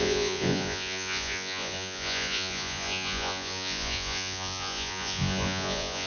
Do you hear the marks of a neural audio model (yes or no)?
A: yes